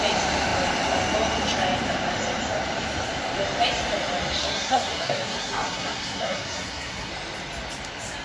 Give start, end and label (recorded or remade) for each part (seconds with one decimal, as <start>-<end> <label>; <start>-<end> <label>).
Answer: 0.0-4.4 recorded; 4.4-7.1 remade; 7.1-8.2 recorded